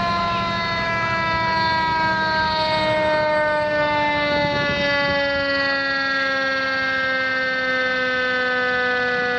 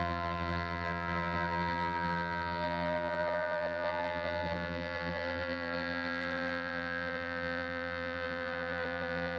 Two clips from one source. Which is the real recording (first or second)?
first